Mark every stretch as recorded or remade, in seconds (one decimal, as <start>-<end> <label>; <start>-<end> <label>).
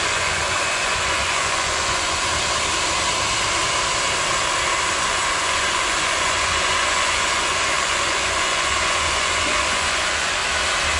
0.0-2.3 remade; 2.3-5.0 recorded; 5.0-10.4 remade; 10.4-11.0 recorded